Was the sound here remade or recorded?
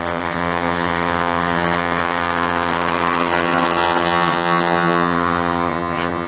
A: remade